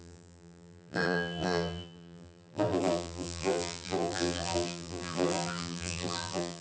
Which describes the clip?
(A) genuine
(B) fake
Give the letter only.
B